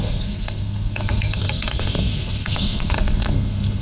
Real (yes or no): no